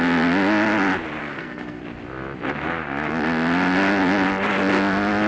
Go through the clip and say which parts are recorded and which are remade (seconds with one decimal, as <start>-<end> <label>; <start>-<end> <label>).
0.0-1.2 recorded; 1.2-1.8 remade; 1.8-5.3 recorded